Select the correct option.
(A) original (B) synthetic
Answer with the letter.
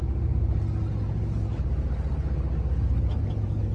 A